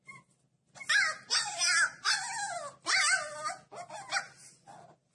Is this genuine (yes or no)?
yes